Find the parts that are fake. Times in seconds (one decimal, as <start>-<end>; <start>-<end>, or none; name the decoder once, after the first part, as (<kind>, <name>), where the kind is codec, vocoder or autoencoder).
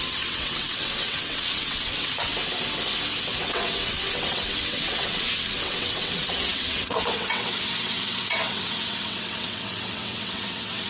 0.0-2.3 (vocoder, WaveNeXt); 3.4-10.9